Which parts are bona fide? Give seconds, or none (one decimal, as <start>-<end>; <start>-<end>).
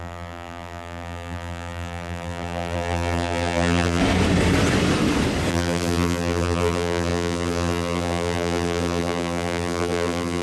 4.0-5.5